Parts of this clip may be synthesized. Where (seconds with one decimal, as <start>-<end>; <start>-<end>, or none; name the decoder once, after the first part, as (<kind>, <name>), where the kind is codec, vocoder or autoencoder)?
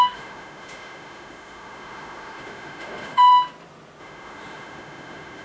0.0-3.3 (autoencoder, DAC-VAE); 4.0-5.4